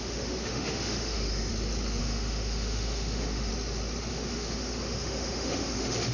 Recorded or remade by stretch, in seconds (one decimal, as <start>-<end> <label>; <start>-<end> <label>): 0.0-1.5 remade; 1.5-2.0 recorded; 2.0-3.5 remade; 3.5-4.1 recorded; 4.1-6.1 remade